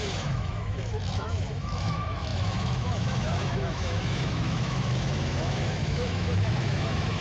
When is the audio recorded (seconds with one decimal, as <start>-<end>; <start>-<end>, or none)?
none